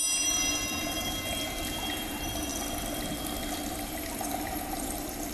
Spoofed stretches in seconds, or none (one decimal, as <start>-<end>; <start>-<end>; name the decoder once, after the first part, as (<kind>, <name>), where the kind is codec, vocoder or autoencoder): 0.0-2.5 (vocoder, BigVGAN v2); 3.6-5.3